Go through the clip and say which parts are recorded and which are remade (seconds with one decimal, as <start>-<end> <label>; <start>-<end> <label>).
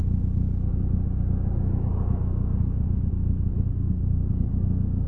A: 0.0-3.7 recorded; 3.7-5.1 remade